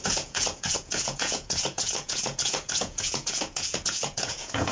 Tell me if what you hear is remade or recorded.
remade